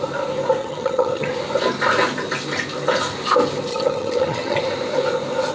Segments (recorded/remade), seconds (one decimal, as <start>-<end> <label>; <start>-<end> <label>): 0.0-0.6 recorded; 0.6-1.3 remade; 1.3-3.7 recorded; 3.7-4.6 remade; 4.6-5.5 recorded